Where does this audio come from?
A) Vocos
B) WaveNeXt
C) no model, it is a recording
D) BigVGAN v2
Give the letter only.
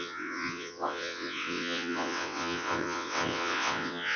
B